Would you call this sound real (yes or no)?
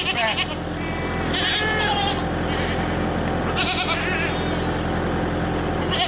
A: yes